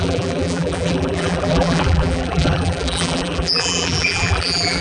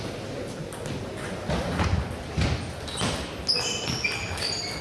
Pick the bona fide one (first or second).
second